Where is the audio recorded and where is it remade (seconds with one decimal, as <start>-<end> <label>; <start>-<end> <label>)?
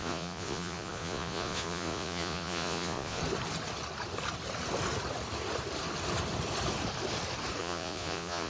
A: 0.0-3.2 remade; 3.2-7.6 recorded; 7.6-8.5 remade